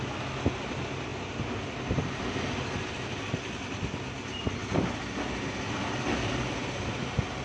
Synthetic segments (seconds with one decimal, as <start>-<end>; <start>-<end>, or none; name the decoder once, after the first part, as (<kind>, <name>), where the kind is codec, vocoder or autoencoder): none